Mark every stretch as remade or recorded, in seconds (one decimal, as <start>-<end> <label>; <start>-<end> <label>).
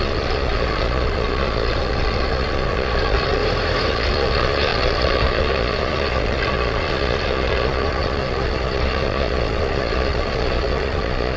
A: 0.0-3.4 remade; 3.4-3.9 recorded; 3.9-11.4 remade